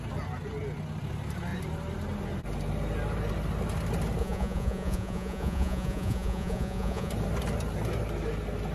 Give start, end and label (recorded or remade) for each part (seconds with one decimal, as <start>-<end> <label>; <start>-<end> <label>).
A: 0.0-4.2 recorded; 4.2-7.1 remade; 7.1-8.7 recorded